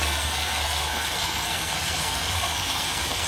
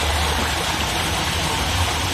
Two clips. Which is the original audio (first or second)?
second